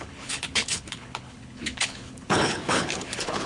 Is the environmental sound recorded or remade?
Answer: remade